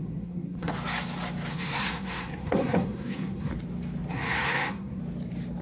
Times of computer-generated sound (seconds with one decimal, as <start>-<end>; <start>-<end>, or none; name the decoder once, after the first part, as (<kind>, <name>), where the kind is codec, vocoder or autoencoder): 0.0-0.7 (codec, SNAC); 1.5-3.5; 4.1-5.0